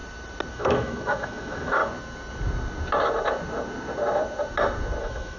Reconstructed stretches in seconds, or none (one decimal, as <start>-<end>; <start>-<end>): 0.5-1.8; 5.0-5.4